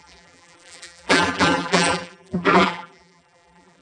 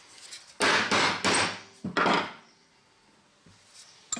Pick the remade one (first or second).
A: first